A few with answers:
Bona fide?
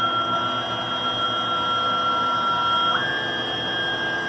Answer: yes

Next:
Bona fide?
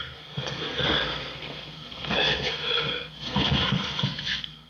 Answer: no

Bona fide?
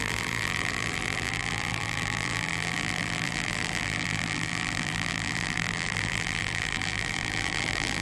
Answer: no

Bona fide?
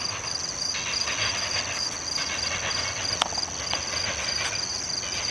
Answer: yes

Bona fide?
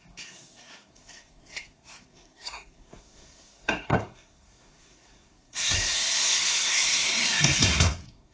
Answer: no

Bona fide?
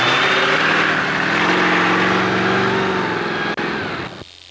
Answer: yes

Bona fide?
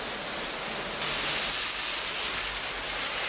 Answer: yes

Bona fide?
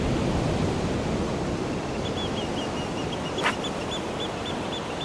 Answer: yes